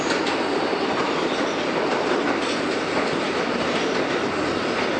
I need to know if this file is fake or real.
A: real